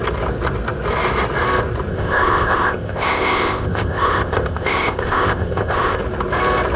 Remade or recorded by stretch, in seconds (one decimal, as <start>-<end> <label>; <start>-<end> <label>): 0.0-1.9 recorded; 1.9-6.0 remade; 6.0-6.8 recorded